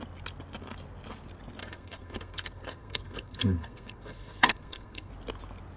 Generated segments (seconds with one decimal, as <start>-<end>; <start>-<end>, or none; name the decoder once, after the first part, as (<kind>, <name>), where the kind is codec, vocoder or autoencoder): 1.6-5.1 (codec, SNAC)

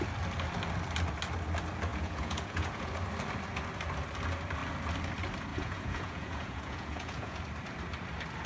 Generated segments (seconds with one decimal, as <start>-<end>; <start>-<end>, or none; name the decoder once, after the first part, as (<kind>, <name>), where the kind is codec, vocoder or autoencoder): 1.9-2.9 (vocoder, Vocos); 5.5-7.4